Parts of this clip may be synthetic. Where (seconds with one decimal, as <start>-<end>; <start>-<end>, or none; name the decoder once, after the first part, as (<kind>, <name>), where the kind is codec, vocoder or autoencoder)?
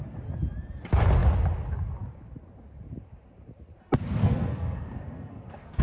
4.2-5.8 (codec, SNAC)